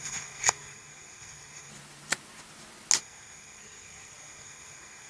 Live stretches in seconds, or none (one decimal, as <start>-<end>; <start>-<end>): 1.7-3.0

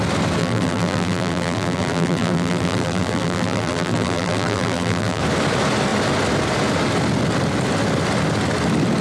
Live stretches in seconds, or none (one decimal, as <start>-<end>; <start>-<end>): 0.0-0.4; 5.2-9.0

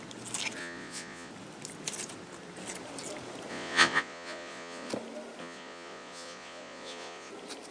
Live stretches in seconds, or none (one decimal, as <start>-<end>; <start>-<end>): 0.0-0.6; 1.3-3.5; 4.9-5.4; 7.3-7.7

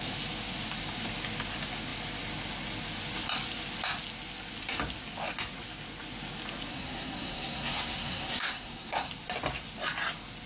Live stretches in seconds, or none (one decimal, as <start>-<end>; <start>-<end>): 0.0-6.7; 9.1-10.5

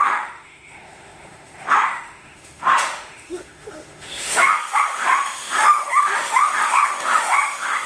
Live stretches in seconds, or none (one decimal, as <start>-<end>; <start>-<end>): none